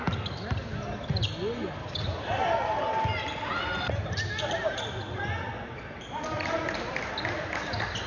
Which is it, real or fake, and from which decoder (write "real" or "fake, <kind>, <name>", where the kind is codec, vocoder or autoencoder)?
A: real